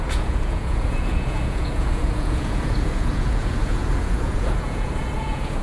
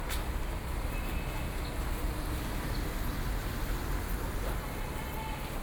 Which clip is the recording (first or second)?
second